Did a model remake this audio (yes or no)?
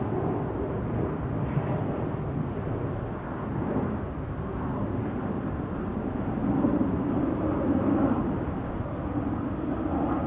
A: no